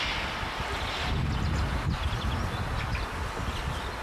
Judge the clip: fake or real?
real